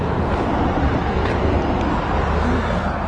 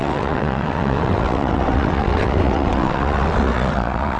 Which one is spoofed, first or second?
second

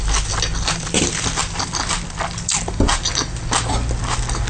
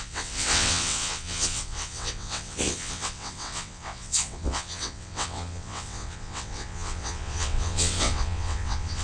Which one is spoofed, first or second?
second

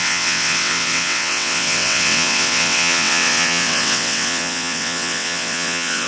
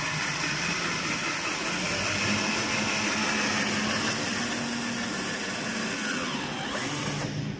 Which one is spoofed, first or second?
first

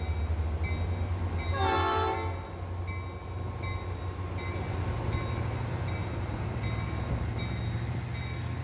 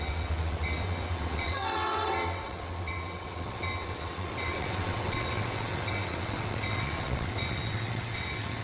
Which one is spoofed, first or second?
second